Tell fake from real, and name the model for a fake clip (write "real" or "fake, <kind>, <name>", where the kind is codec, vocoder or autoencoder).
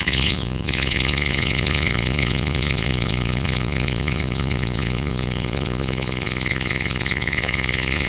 fake, vocoder, Vocos